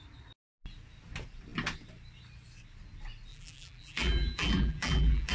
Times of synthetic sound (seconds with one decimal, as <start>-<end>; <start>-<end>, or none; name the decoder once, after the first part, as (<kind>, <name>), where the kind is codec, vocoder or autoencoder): 3.3-5.3 (vocoder, BigVGAN v2)